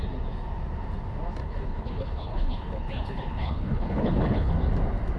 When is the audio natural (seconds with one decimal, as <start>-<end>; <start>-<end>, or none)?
0.0-1.4; 4.5-5.2